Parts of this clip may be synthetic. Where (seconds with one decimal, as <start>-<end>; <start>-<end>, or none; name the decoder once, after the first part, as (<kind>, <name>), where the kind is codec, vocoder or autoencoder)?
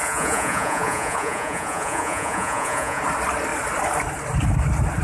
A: 0.0-3.0 (vocoder, Vocos)